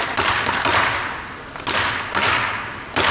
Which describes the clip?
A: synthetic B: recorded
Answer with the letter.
B